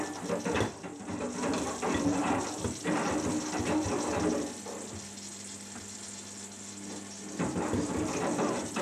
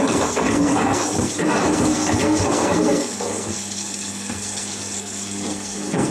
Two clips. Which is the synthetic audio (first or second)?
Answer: second